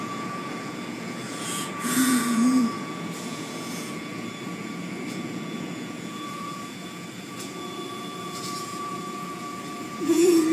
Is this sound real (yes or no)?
no